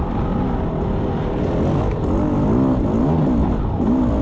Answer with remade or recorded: recorded